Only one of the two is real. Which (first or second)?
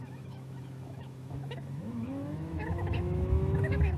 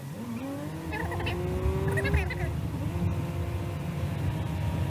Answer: second